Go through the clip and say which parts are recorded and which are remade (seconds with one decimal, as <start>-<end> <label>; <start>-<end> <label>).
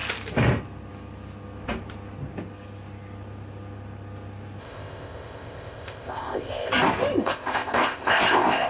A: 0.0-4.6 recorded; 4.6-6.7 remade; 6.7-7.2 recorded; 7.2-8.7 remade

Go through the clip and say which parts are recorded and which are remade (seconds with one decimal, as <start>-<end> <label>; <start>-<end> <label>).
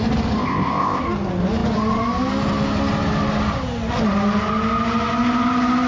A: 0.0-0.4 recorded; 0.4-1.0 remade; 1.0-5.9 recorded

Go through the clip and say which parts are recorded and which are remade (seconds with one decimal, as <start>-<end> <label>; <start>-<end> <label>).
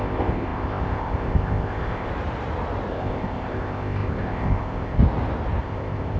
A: 0.0-2.1 remade; 2.1-2.9 recorded; 2.9-5.0 remade; 5.0-5.6 recorded; 5.6-6.2 remade